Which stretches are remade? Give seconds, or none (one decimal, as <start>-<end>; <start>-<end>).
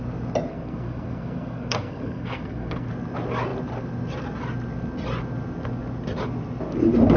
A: 0.5-2.9